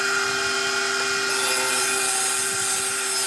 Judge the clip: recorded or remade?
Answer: recorded